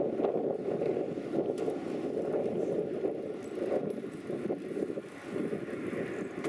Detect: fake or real real